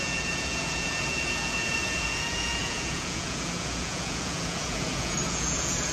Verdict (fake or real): fake